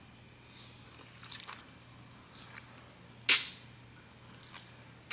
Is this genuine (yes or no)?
yes